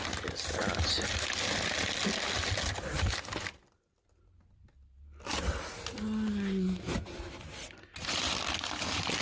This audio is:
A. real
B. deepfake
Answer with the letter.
A